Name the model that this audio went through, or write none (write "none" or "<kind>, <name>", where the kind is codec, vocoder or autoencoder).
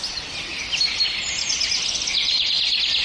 none